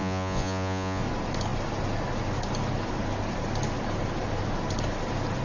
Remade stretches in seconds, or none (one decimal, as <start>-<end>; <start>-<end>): 0.0-1.0